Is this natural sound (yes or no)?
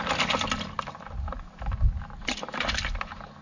yes